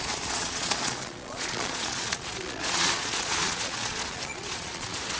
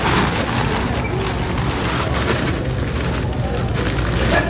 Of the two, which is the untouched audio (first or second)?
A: second